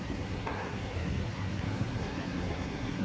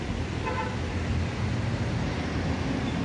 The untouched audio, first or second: second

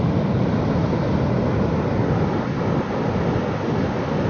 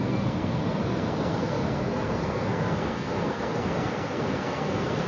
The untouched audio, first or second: first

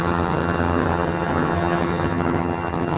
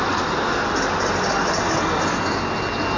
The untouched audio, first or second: second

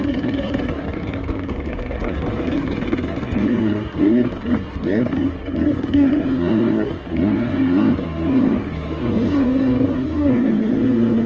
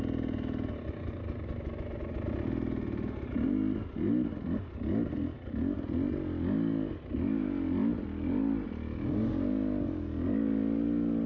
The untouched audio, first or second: second